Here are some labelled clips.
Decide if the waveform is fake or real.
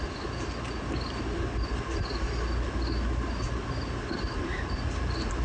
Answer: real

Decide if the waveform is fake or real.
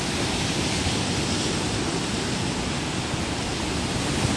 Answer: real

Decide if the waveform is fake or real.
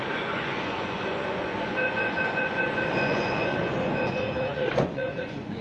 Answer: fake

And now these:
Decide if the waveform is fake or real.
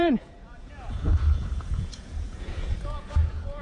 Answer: fake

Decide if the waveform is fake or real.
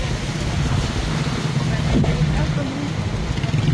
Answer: real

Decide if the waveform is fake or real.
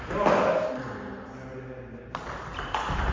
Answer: real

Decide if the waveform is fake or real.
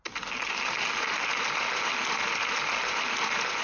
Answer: real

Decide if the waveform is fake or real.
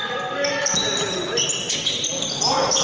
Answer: real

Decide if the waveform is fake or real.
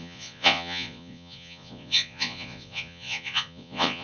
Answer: fake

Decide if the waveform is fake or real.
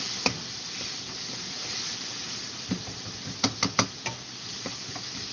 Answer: real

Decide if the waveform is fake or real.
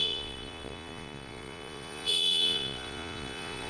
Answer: fake